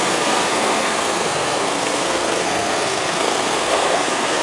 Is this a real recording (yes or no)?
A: no